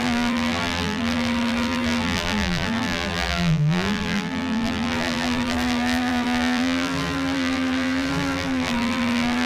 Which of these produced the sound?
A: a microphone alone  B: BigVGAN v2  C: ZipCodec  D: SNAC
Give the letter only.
B